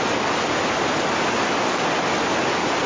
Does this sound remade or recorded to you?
recorded